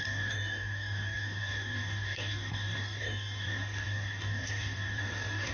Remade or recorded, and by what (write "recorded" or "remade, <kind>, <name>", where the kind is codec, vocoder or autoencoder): remade, codec, DAC